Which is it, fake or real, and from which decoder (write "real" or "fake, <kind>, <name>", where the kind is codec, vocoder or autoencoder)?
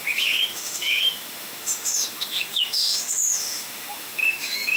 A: fake, autoencoder, DAC-VAE